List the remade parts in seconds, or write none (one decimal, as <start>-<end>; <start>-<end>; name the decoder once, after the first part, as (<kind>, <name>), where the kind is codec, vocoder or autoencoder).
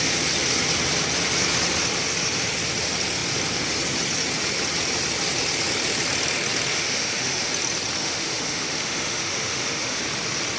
6.7-7.5 (autoencoder, DAC-VAE); 8.0-10.0